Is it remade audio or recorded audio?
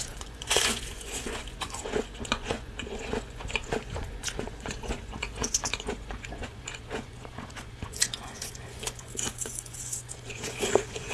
remade